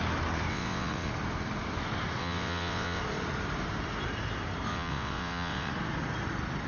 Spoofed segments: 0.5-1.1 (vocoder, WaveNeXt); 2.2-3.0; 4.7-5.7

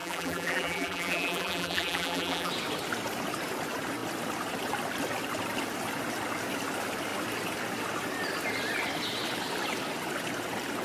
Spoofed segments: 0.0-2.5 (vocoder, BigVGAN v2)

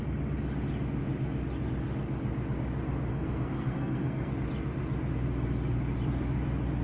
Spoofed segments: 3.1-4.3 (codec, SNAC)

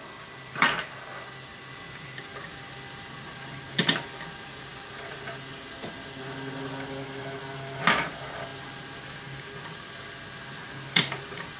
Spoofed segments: none

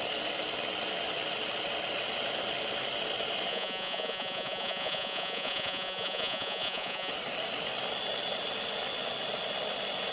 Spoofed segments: 3.5-7.1 (vocoder, Vocos)

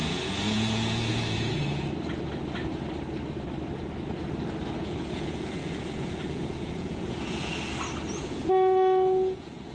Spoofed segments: 0.0-1.6 (vocoder, Vocos); 4.8-7.5; 8.1-9.7

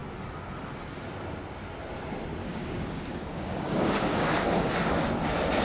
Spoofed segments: 2.4-5.0 (codec, DAC)

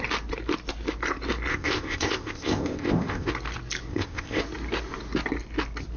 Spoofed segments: 1.5-3.3 (codec, ZipCodec); 3.9-4.4